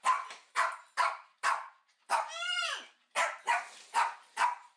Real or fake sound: fake